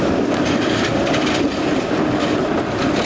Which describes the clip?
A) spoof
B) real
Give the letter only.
B